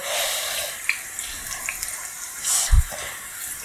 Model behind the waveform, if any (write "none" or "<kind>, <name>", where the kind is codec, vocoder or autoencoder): none